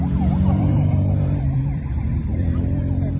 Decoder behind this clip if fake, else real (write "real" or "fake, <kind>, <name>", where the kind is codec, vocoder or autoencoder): fake, vocoder, BigVGAN v2